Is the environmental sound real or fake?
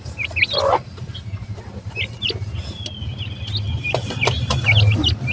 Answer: real